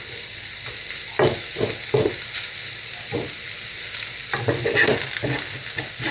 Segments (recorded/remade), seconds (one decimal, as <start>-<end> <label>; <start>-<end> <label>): 0.0-6.1 recorded